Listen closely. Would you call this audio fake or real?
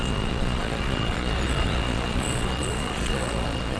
fake